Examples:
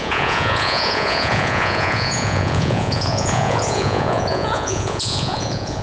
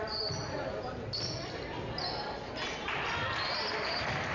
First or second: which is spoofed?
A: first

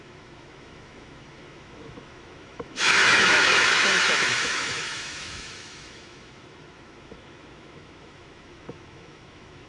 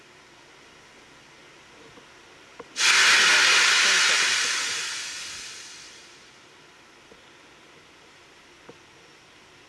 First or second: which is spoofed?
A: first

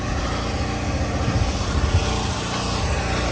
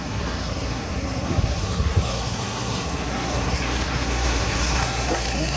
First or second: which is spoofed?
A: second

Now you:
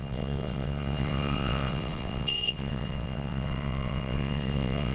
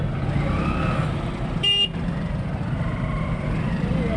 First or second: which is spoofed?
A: first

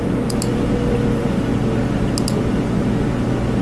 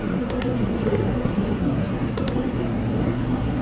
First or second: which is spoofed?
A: second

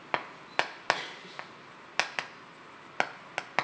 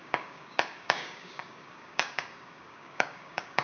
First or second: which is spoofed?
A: second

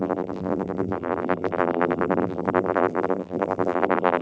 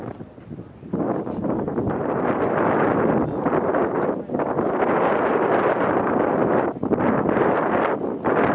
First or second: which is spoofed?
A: first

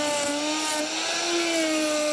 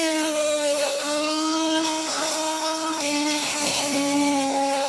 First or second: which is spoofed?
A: second